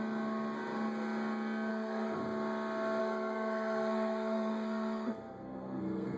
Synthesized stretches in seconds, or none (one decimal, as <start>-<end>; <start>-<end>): 1.7-2.2; 3.0-6.2